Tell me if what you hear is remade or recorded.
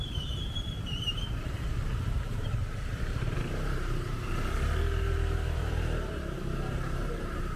remade